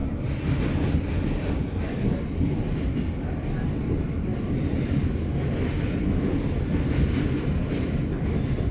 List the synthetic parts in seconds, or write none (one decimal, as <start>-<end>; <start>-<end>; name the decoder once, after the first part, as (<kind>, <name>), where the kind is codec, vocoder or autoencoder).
none

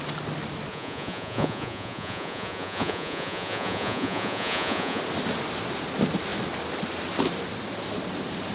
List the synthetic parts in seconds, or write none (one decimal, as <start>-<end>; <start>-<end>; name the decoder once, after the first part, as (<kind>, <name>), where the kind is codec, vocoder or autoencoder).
0.7-5.0 (vocoder, Vocos)

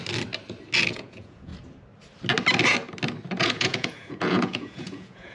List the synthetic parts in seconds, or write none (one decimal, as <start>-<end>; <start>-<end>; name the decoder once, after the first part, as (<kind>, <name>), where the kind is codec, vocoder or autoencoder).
0.9-1.5 (vocoder, Vocos); 3.4-5.3

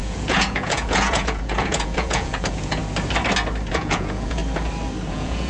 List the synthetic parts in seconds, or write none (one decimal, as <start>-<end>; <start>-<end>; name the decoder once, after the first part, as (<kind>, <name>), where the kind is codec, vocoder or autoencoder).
0.0-2.8 (vocoder, Vocos); 3.7-4.4; 5.1-5.5